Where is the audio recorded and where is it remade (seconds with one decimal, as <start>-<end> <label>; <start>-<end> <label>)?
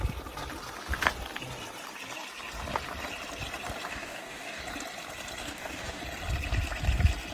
0.0-3.9 recorded; 3.9-4.6 remade; 4.6-5.4 recorded; 5.4-6.0 remade; 6.0-7.3 recorded